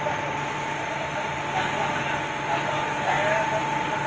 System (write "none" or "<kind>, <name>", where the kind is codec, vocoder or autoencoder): none